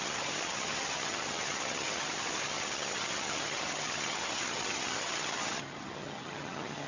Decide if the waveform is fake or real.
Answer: fake